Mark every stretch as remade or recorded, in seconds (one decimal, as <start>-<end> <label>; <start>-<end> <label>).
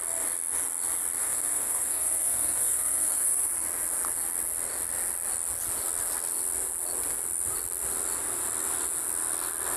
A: 0.0-1.2 recorded; 1.2-3.5 remade; 3.5-9.8 recorded